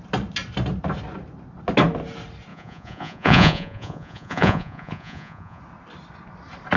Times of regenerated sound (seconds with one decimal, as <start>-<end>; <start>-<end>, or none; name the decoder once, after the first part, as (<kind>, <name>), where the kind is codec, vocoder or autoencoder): 2.5-5.6 (vocoder, Vocos)